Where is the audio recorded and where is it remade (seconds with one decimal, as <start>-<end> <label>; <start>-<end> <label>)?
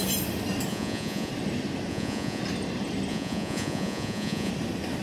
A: 0.0-0.7 recorded; 0.7-1.3 remade; 1.3-1.9 recorded; 1.9-2.4 remade; 2.4-3.1 recorded; 3.1-4.5 remade; 4.5-5.0 recorded